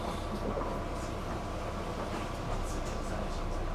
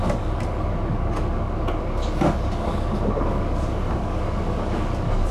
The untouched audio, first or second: first